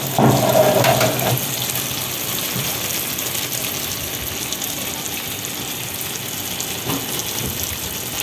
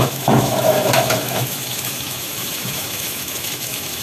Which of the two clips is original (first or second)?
first